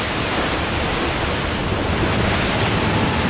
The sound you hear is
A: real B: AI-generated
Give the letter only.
A